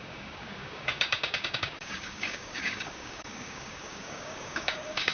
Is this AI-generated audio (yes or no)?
yes